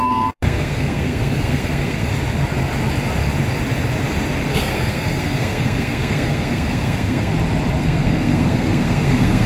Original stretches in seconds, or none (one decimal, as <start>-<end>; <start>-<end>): 2.1-4.5; 7.3-7.8